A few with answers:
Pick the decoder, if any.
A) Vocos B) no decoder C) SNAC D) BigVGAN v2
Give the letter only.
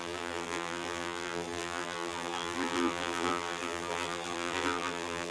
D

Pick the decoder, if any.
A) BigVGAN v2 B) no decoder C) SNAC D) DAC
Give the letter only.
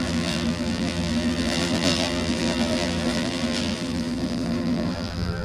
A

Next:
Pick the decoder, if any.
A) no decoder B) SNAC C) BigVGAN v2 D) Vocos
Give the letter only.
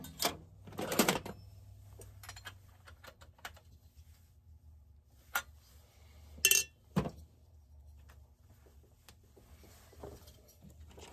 A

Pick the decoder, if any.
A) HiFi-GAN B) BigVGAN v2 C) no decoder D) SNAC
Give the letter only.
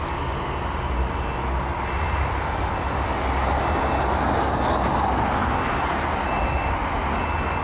C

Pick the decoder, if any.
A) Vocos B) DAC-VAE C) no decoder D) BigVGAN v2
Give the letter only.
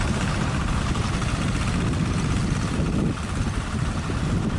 C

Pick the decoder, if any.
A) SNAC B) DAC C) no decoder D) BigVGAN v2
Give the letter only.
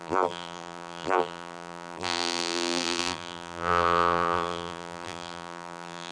D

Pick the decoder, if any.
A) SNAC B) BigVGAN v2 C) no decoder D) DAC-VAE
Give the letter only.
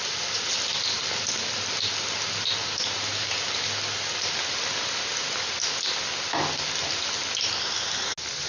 C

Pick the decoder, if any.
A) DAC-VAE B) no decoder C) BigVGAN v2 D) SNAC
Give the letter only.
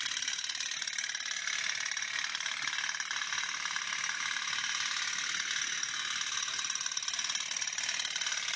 B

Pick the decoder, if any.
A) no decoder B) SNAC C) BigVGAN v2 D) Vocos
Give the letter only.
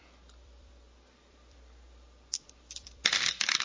C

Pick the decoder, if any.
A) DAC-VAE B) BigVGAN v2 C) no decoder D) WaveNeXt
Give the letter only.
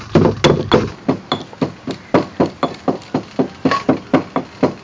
C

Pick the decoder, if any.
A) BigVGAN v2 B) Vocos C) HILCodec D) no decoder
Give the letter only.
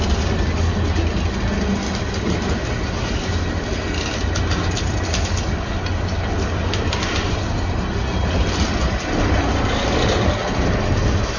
D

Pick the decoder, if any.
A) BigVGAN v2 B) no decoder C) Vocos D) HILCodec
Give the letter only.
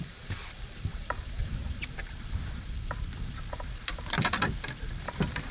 A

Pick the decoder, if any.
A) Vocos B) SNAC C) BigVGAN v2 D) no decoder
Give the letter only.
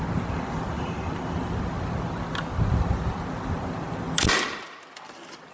D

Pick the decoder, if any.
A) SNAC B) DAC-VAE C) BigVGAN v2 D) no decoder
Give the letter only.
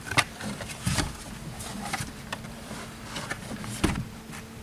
C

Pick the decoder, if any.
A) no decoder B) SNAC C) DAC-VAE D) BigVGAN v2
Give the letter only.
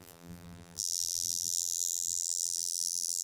D